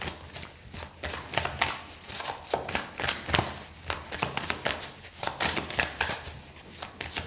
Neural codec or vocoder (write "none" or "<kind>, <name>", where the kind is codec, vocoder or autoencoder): none